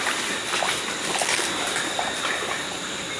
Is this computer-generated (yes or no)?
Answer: no